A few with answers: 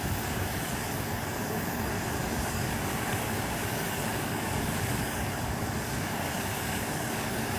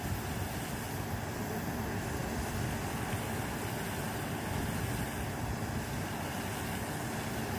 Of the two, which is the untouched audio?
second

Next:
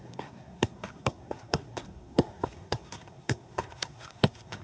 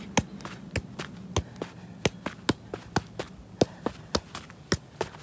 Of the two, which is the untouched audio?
second